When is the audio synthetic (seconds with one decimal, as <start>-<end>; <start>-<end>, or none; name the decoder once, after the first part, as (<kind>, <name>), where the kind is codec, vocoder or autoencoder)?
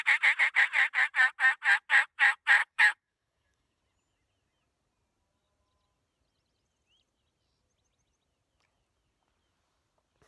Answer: 2.6-3.8 (codec, DAC)